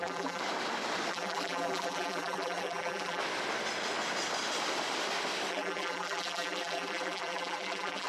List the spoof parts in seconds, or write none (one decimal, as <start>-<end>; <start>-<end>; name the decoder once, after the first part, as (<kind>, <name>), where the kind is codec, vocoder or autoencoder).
0.0-0.4 (vocoder, BigVGAN v2); 1.1-3.2; 5.5-8.1